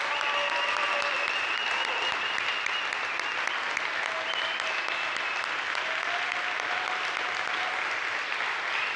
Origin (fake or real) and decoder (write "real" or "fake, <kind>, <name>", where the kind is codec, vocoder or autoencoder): real